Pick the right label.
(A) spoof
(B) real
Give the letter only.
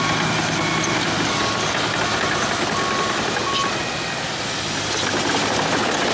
B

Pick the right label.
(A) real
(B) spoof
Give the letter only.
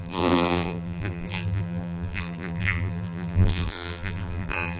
B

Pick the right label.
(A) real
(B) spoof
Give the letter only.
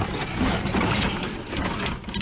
B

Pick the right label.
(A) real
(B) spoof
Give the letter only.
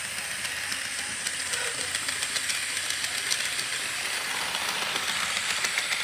A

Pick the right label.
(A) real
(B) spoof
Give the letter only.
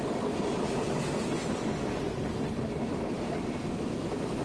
A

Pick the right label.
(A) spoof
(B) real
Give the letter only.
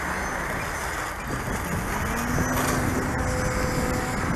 B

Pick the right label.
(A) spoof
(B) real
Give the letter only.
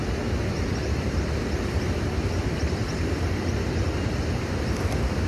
A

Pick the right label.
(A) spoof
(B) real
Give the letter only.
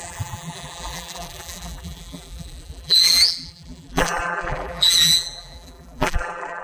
A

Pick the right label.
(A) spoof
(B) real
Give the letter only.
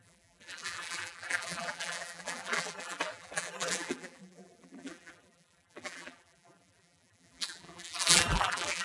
A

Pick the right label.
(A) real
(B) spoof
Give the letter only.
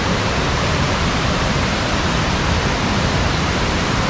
B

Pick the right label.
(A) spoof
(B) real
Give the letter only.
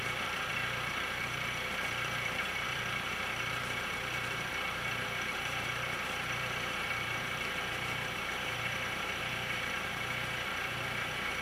A